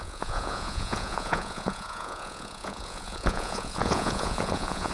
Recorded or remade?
remade